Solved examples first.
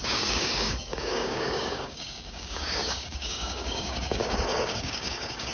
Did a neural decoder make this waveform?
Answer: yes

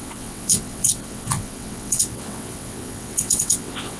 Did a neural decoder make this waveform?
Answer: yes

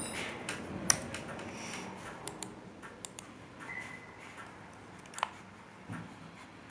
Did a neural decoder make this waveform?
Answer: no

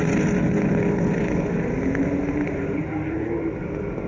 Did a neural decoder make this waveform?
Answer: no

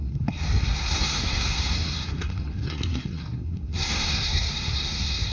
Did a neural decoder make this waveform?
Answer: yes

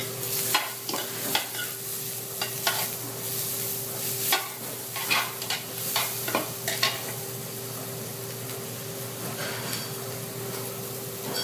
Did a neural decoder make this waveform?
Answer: no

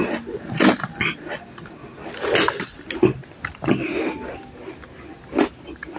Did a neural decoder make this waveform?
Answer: no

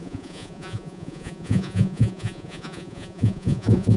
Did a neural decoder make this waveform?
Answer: yes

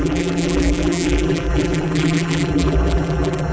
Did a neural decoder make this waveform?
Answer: yes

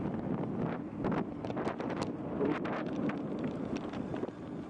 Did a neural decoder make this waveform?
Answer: no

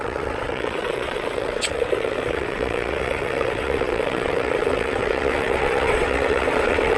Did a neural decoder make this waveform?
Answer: yes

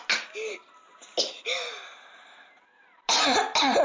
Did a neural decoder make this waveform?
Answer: no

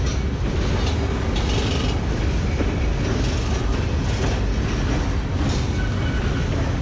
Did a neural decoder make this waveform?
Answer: no